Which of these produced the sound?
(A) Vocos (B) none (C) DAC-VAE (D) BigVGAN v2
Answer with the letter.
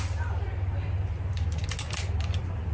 B